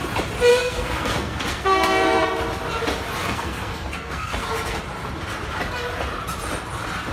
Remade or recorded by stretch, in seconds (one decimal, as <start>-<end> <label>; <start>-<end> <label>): 0.0-0.5 recorded; 0.5-2.4 remade; 2.4-3.2 recorded; 3.2-4.8 remade; 4.8-7.1 recorded